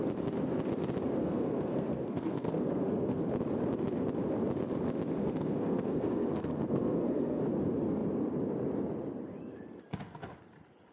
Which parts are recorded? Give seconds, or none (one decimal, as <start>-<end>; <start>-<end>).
0.0-1.2; 3.2-5.2; 7.4-10.9